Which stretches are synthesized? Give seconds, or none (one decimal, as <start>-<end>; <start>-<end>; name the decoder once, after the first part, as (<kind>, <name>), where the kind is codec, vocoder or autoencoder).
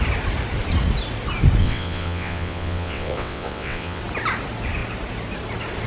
1.6-4.0 (vocoder, WaveNeXt)